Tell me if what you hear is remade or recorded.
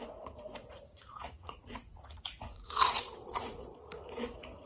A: remade